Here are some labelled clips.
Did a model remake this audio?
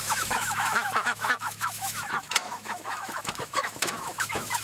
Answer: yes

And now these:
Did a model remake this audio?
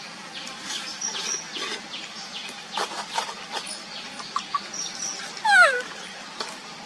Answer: no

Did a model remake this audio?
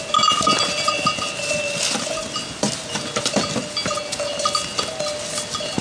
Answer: no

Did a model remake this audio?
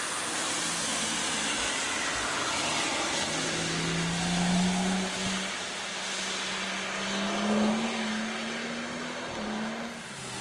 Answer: no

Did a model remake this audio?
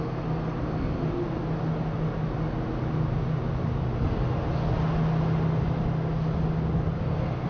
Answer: no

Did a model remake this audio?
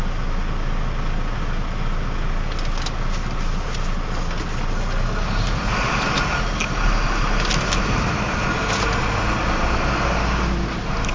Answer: no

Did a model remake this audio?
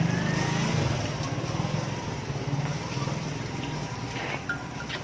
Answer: no